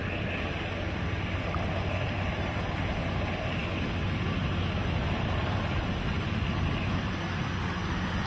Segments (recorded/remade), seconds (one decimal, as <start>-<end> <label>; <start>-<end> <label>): 0.0-8.3 recorded